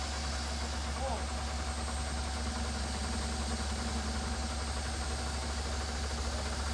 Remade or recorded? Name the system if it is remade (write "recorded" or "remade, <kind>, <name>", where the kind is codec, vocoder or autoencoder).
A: recorded